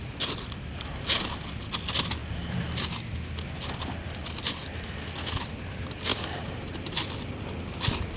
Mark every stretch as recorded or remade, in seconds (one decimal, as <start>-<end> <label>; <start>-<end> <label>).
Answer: 0.0-6.1 recorded; 6.1-7.3 remade; 7.3-8.2 recorded